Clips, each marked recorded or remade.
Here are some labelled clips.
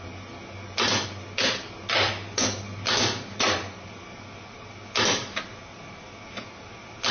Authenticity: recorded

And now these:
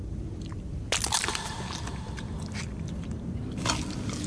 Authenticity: recorded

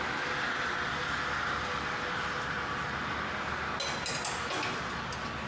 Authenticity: recorded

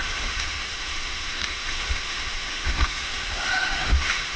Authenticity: remade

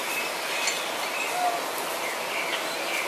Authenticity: recorded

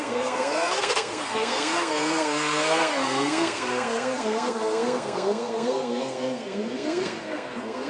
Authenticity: remade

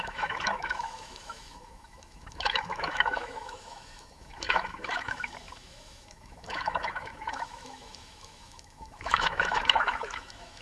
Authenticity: remade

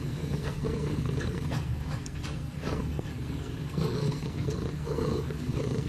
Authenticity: remade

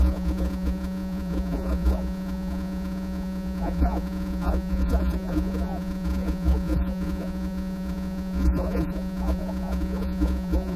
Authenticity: remade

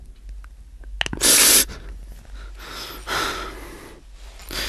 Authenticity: recorded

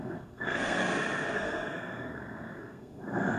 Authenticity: remade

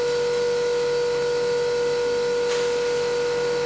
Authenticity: recorded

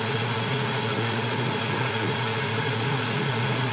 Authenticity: remade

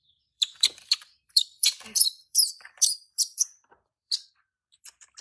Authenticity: remade